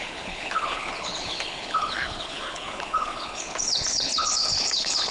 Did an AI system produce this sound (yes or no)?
yes